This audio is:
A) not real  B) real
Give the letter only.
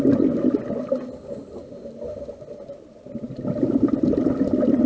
B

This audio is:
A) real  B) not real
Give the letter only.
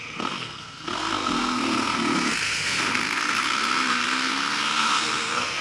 B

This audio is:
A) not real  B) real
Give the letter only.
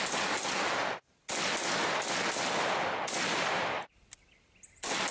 B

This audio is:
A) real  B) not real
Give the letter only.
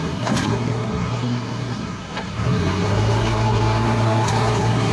B